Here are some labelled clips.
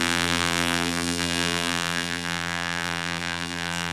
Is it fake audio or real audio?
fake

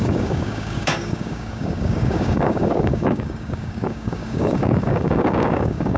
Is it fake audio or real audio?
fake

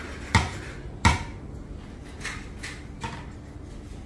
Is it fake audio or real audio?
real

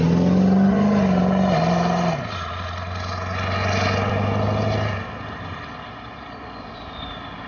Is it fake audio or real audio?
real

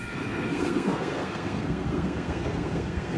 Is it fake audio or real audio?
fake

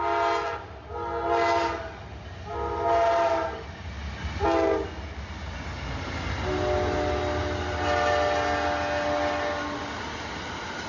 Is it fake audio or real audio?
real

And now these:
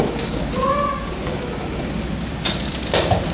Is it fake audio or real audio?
fake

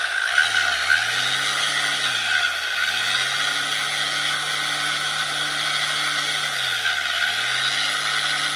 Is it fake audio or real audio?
real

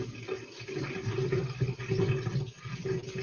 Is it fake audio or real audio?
real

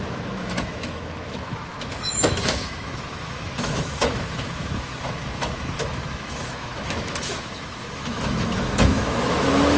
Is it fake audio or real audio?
fake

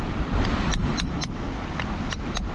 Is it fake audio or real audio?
real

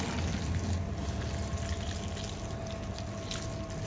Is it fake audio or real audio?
real